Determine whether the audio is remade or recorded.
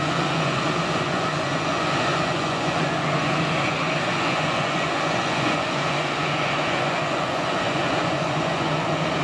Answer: remade